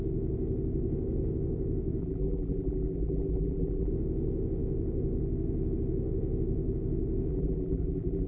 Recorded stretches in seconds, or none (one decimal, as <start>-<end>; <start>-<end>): 0.0-2.0; 3.9-7.3

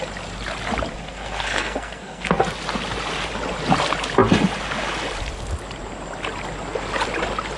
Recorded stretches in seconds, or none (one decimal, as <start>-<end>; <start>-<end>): 0.0-0.9; 2.4-7.6

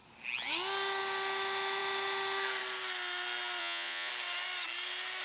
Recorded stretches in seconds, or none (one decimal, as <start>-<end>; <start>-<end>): 0.0-3.6; 4.1-5.2